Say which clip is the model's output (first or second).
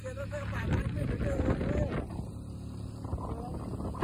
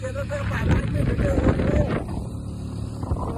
second